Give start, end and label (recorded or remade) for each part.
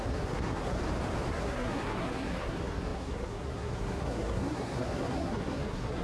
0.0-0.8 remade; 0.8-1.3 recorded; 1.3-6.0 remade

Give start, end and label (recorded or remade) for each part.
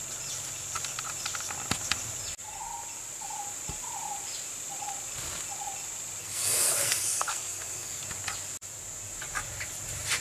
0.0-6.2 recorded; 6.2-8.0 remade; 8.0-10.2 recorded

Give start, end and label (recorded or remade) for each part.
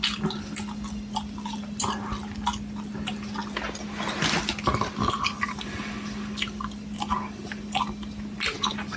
0.0-9.0 recorded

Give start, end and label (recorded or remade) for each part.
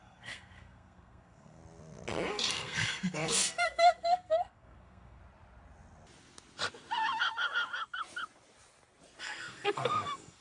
0.0-1.6 remade; 1.6-2.3 recorded; 2.3-5.2 remade; 5.2-9.2 recorded; 9.2-10.4 remade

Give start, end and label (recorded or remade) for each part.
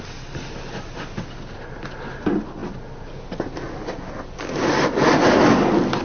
0.0-6.0 recorded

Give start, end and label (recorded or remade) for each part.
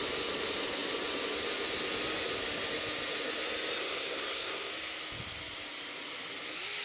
0.0-3.8 recorded; 3.8-4.7 remade; 4.7-6.8 recorded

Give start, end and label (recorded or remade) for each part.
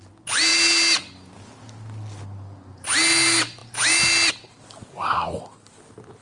0.0-6.2 recorded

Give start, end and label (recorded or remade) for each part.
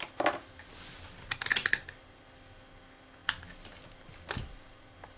0.0-5.2 recorded